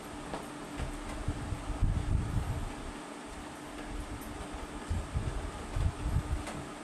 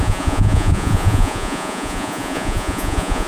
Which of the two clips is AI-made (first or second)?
second